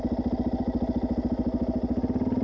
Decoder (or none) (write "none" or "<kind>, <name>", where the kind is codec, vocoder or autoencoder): none